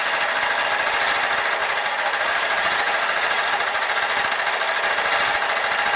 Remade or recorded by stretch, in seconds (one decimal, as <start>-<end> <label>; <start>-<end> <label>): 0.0-1.6 recorded; 1.6-4.0 remade; 4.0-6.0 recorded